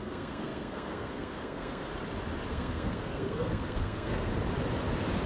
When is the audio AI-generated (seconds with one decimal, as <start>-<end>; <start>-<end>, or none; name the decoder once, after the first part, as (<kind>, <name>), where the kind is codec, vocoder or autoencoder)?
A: 0.0-1.9 (codec, SNAC); 2.5-4.3